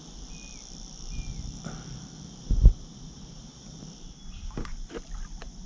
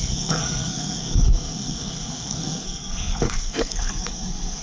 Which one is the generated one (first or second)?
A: second